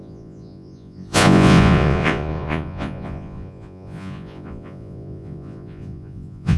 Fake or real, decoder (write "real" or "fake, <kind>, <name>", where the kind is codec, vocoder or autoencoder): fake, vocoder, Vocos